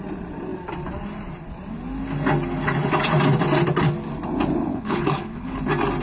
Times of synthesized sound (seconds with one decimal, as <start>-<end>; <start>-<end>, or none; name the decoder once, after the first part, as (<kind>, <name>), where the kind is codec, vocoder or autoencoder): 4.7-5.6 (codec, HILCodec)